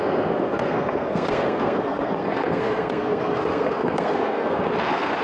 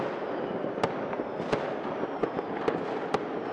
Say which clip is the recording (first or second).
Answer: second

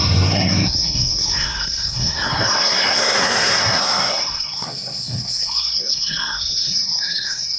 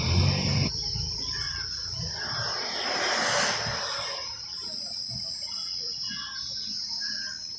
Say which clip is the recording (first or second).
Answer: second